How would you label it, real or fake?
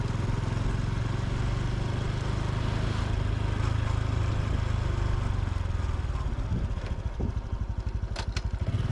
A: real